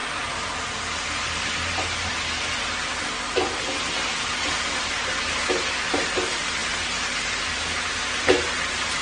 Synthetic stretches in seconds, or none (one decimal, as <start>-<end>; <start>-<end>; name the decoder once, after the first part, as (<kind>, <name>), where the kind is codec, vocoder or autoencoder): none